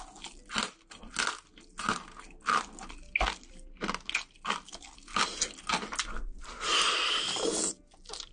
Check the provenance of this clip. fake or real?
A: real